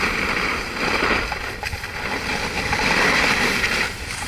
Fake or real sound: fake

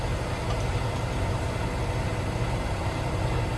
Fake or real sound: real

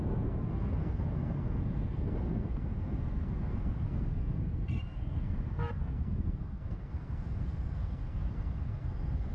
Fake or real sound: fake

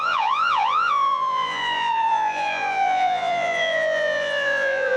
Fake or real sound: fake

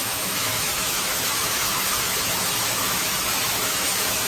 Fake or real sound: fake